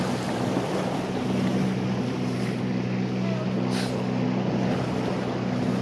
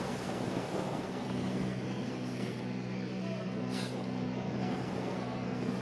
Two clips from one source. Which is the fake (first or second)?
second